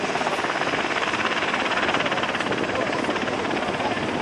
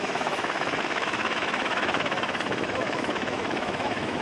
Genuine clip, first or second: first